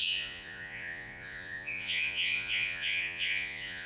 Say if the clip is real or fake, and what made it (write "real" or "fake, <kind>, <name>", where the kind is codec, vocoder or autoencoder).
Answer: fake, vocoder, Vocos